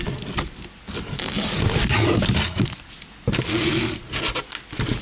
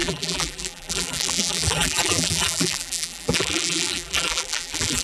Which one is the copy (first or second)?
second